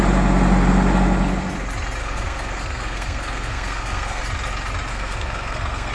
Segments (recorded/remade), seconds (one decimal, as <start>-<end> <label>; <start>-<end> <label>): 0.0-2.0 recorded; 2.0-4.2 remade; 4.2-4.9 recorded; 4.9-5.9 remade